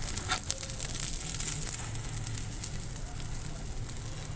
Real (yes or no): yes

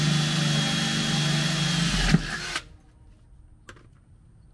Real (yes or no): yes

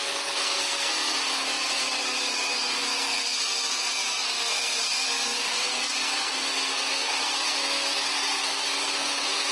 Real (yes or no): no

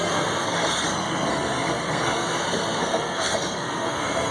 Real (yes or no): no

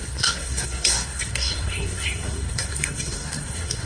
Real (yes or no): no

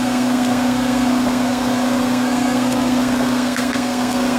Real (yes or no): no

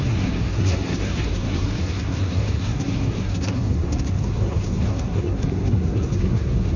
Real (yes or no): no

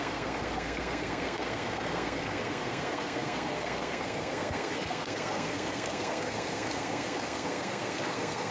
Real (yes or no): no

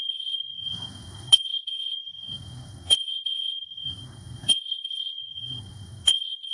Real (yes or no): no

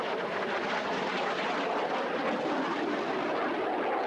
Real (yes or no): yes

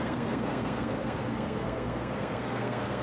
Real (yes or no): no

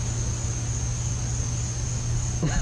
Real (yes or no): yes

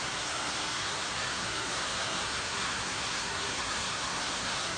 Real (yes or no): no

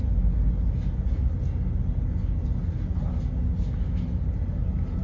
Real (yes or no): yes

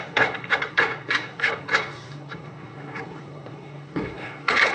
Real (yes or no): no